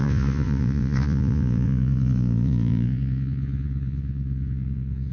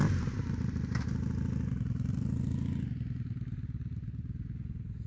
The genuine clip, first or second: second